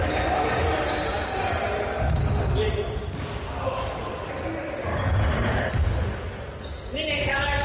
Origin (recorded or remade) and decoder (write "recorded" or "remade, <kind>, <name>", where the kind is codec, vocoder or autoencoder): recorded